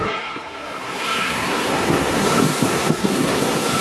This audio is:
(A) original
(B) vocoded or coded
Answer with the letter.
B